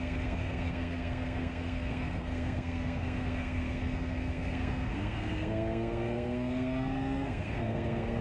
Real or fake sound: fake